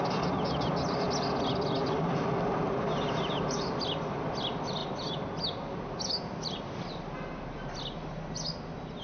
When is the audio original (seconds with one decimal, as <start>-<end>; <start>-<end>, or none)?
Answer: 0.0-9.0